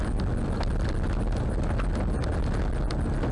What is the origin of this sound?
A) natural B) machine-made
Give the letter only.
A